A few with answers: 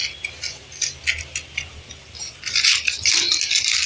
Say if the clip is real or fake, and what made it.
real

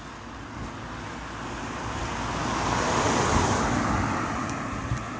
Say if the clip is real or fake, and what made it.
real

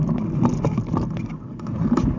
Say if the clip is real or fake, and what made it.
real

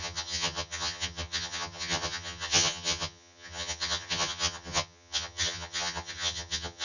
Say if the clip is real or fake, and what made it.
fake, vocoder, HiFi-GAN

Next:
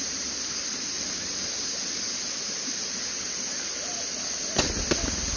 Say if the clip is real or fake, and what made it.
real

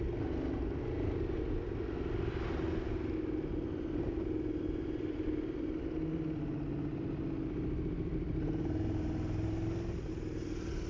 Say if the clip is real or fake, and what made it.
real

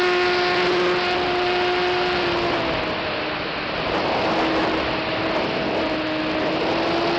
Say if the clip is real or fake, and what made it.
real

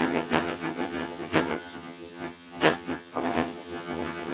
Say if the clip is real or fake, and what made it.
fake, vocoder, HiFi-GAN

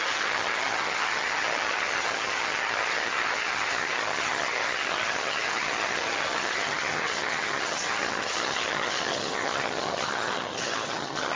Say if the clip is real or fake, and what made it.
fake, vocoder, HiFi-GAN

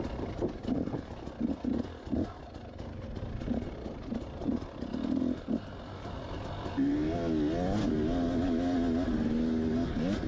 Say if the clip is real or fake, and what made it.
real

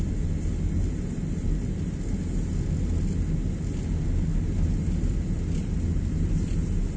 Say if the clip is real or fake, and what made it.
real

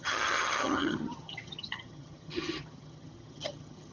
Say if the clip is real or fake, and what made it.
fake, vocoder, HiFi-GAN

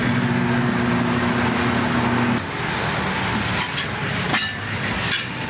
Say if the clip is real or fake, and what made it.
real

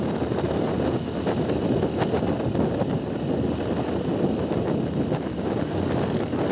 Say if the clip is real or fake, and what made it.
real